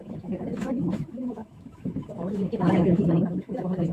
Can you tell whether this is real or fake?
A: fake